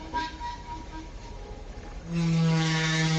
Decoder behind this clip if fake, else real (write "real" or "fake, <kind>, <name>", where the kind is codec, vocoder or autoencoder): fake, autoencoder, DAC-VAE